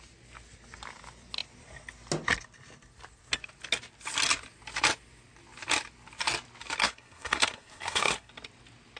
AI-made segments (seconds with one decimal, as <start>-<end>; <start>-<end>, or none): 6.8-8.3